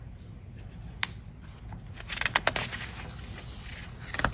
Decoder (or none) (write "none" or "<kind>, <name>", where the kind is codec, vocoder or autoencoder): none